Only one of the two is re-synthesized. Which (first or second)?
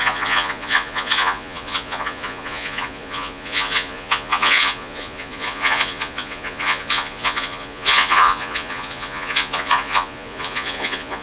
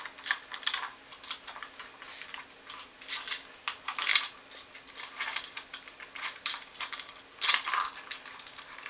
first